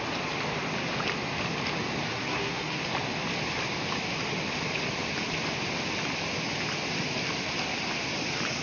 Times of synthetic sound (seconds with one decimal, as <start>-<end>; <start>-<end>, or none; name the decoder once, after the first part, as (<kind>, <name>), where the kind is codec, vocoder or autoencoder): 2.1-2.8 (codec, SNAC)

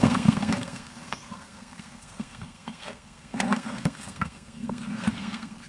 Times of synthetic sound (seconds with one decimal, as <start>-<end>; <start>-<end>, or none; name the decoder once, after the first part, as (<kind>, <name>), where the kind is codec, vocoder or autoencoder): 0.0-5.7 (codec, SNAC)

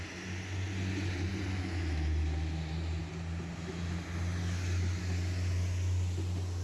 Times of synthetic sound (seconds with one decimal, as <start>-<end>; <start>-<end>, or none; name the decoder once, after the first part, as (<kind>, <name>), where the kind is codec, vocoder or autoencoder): none

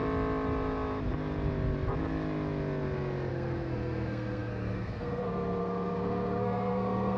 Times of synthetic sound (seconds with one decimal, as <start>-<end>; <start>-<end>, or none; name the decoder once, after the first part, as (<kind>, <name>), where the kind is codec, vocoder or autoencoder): 3.3-7.2 (codec, SNAC)

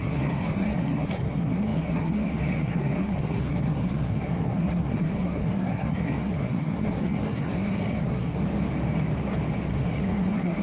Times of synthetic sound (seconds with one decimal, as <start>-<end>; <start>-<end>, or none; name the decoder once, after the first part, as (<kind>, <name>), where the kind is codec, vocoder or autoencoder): 0.0-8.4 (codec, SNAC); 9.7-10.6

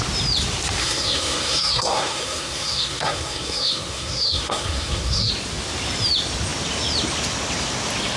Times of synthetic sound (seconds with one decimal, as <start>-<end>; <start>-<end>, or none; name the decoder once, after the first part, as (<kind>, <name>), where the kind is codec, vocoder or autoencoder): 0.8-5.3 (codec, SNAC)